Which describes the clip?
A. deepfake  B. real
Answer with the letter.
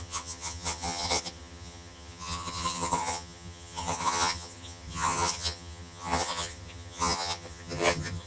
A